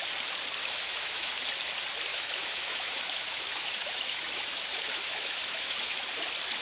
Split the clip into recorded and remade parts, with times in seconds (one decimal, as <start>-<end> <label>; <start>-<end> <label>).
0.0-0.6 recorded; 0.6-1.3 remade; 1.3-2.1 recorded; 2.1-6.1 remade; 6.1-6.6 recorded